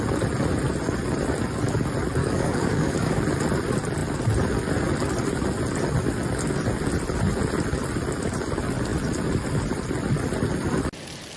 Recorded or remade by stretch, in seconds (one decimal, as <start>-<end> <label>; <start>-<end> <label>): 0.0-2.2 recorded; 2.2-3.2 remade; 3.2-11.4 recorded